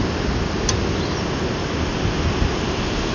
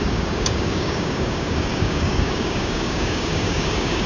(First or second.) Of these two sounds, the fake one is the second